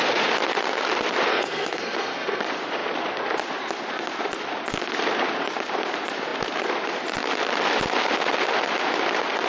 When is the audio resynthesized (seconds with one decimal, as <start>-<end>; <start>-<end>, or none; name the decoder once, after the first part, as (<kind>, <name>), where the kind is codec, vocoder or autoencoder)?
1.3-2.4 (codec, SNAC)